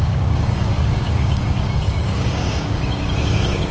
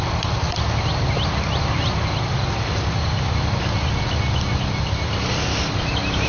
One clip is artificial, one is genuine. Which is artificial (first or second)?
first